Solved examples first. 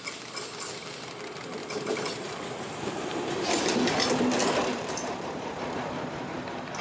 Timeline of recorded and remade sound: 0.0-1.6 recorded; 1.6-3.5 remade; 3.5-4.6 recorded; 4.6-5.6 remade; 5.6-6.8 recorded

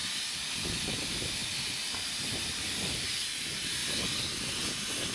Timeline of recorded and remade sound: 0.0-1.4 recorded; 1.4-3.1 remade; 3.1-5.1 recorded

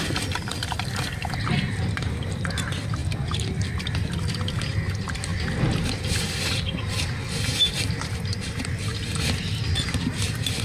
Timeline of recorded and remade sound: 0.0-10.6 recorded

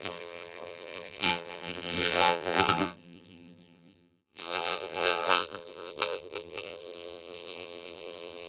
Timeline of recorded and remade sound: 0.0-8.5 remade

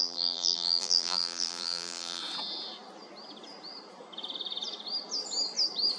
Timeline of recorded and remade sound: 0.0-2.2 remade; 2.2-6.0 recorded